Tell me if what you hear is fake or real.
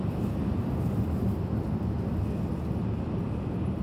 real